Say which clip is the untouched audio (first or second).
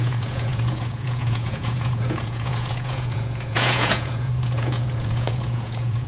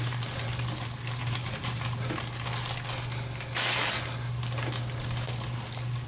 second